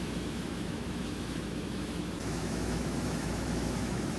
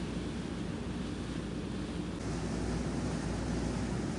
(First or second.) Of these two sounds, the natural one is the second